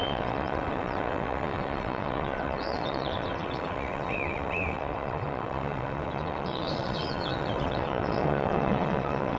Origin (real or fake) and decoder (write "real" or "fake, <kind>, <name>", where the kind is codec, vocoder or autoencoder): fake, vocoder, WaveNeXt